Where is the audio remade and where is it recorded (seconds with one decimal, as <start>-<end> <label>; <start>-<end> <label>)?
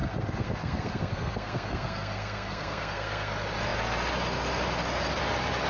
0.0-3.3 remade; 3.3-5.7 recorded